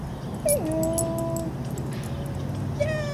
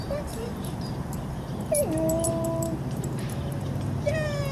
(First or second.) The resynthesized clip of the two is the second